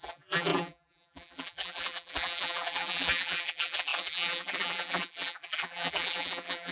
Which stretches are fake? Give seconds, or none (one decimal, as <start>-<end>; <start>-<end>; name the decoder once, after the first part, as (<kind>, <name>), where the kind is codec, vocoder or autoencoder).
0.0-6.7 (vocoder, BigVGAN v2)